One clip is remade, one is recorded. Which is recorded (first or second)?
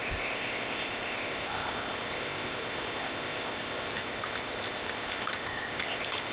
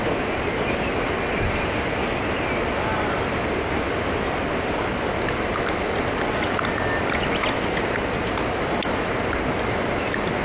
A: second